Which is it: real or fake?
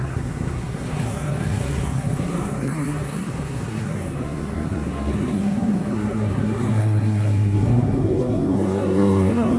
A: fake